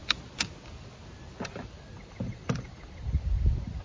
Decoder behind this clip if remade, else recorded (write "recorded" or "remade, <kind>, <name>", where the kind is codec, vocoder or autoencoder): recorded